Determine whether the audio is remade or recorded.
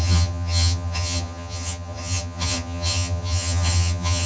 remade